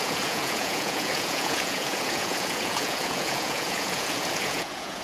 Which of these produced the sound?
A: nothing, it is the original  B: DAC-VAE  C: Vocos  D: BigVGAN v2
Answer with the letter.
C